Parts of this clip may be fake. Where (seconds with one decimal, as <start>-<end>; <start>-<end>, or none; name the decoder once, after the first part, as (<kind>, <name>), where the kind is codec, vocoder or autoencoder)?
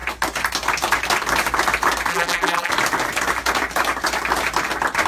2.1-2.7 (vocoder, BigVGAN v2)